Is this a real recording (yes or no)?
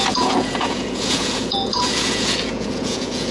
no